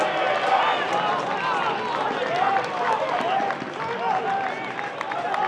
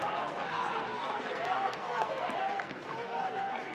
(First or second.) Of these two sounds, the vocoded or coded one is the second